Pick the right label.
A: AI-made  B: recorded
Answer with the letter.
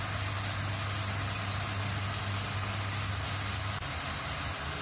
B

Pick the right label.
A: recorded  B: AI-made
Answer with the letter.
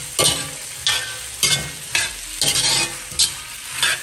A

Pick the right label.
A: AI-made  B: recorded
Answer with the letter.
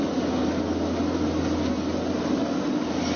B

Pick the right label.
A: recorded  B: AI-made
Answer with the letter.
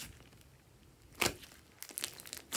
A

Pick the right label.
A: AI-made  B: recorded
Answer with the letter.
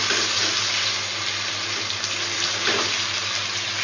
B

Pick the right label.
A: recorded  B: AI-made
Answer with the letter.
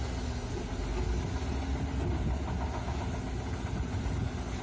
A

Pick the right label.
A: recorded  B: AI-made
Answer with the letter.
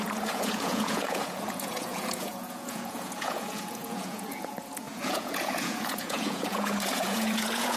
B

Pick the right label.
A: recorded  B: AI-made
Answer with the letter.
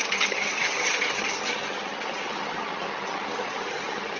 B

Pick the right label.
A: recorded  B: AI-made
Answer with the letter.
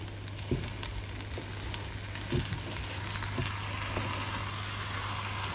A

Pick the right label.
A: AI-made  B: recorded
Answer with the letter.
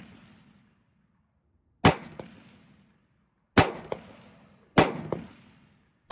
B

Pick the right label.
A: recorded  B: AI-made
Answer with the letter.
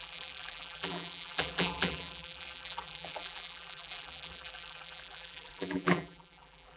B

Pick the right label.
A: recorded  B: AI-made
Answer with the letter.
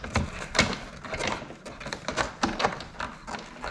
A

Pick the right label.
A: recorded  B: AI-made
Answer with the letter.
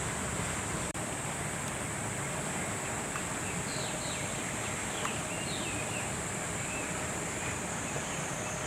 B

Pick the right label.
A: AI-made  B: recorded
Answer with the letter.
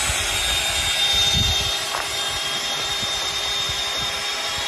B